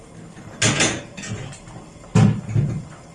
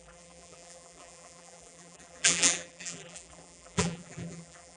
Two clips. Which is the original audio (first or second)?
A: first